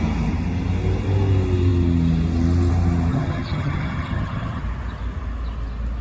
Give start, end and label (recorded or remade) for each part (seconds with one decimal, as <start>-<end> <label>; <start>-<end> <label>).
0.0-3.1 recorded; 3.1-4.6 remade; 4.6-6.0 recorded